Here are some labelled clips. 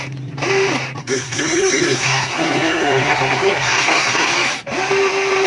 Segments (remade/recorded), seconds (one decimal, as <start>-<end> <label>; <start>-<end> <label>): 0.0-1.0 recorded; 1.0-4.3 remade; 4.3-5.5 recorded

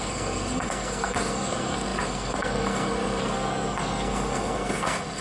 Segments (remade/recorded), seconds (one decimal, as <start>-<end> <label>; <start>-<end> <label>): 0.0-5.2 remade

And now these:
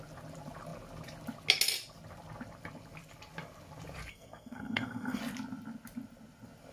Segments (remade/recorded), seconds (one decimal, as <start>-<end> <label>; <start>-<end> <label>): 0.0-4.1 recorded; 4.1-5.2 remade; 5.2-6.7 recorded